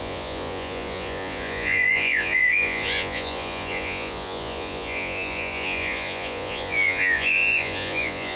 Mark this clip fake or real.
fake